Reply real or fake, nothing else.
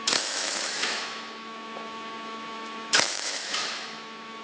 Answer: fake